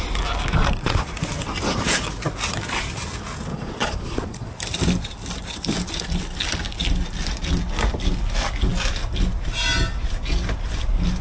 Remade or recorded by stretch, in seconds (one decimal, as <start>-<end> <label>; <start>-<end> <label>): 0.0-3.5 recorded; 3.5-4.5 remade; 4.5-11.2 recorded